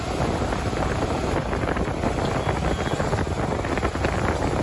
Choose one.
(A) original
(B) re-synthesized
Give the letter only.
A